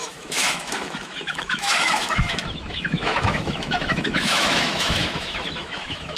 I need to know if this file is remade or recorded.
remade